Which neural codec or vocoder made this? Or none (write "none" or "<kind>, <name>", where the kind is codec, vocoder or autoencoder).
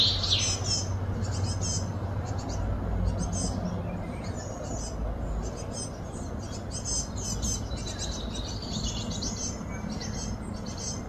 none